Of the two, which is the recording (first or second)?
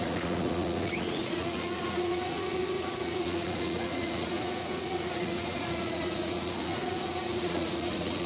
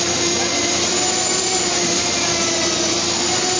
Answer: second